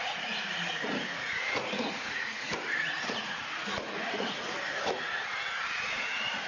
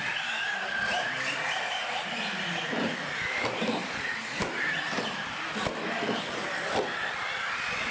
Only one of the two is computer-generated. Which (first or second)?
first